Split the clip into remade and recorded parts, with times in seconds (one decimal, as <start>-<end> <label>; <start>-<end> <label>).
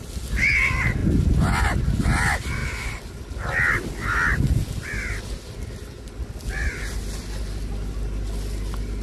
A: 0.0-9.0 recorded